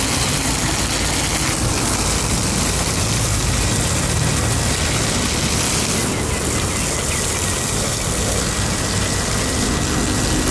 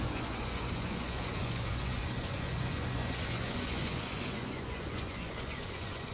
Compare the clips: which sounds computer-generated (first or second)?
second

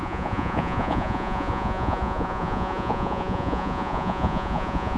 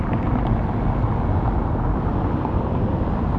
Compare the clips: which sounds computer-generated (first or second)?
first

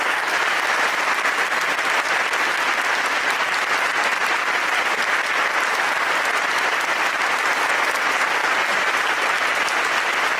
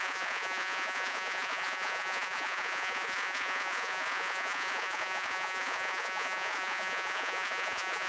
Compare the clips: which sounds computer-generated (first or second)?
second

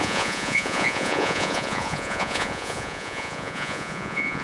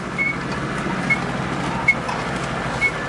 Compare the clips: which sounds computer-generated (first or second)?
first